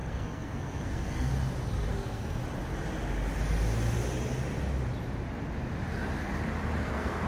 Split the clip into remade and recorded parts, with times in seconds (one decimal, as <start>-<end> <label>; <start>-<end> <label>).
0.0-1.3 remade; 1.3-1.9 recorded; 1.9-2.4 remade; 2.4-6.8 recorded; 6.8-7.3 remade